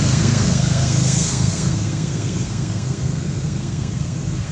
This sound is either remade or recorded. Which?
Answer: remade